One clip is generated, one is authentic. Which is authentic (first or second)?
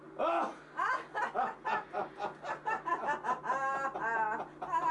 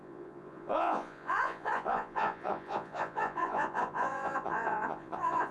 first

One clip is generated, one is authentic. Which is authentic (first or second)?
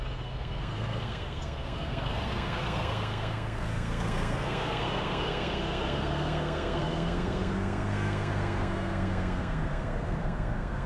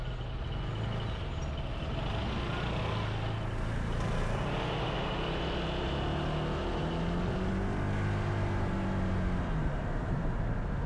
second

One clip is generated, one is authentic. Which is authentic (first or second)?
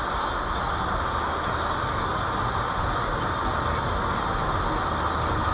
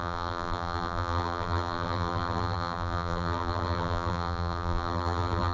first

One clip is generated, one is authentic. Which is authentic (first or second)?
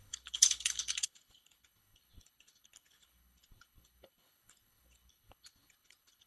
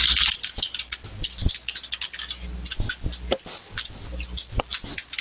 second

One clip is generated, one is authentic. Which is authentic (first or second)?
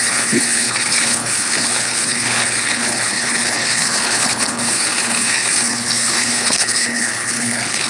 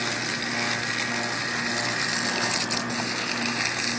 second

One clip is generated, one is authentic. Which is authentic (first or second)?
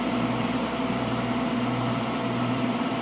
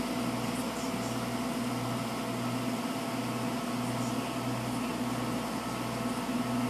second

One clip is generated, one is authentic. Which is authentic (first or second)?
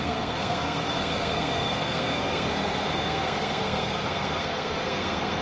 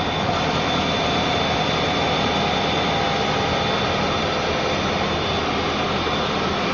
second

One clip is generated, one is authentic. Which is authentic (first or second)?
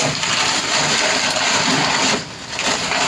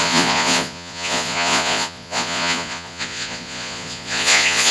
first